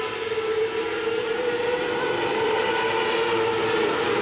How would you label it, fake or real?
fake